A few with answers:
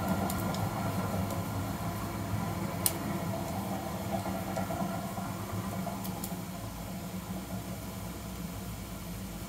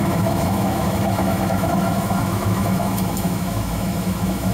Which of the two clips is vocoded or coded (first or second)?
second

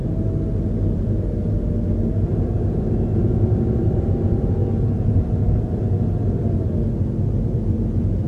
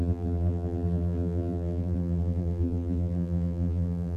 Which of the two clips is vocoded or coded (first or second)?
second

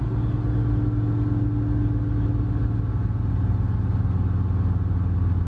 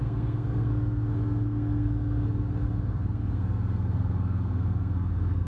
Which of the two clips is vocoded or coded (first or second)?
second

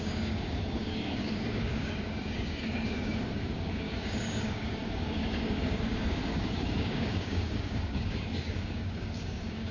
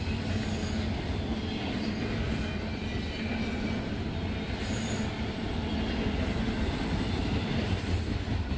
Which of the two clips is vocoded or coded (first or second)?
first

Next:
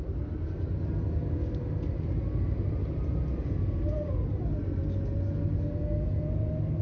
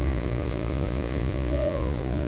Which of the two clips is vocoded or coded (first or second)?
second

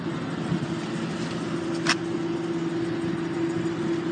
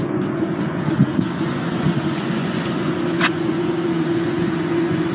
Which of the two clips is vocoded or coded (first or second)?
second